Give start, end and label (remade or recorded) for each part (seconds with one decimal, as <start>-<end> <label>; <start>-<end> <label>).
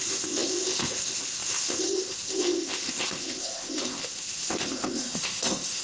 0.0-5.8 remade